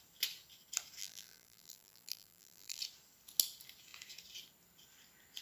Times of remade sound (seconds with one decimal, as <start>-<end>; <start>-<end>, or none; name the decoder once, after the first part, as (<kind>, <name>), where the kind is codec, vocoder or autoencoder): 1.0-2.8 (vocoder, BigVGAN v2)